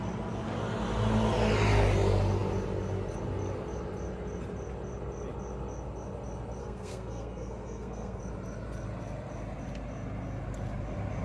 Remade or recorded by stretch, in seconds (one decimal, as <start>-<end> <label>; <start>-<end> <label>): 0.0-6.6 recorded; 6.6-8.2 remade; 8.2-11.2 recorded

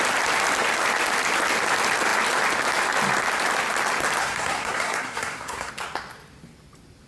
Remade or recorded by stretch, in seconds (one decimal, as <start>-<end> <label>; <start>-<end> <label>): 0.0-4.2 recorded; 4.2-5.7 remade; 5.7-7.1 recorded